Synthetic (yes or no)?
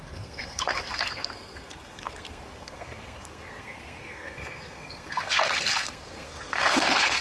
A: yes